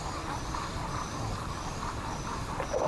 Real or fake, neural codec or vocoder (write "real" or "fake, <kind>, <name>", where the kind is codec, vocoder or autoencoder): real